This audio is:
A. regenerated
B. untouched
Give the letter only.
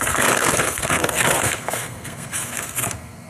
A